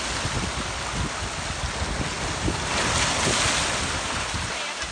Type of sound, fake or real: real